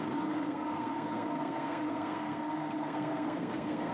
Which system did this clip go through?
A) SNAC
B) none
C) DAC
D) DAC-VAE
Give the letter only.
A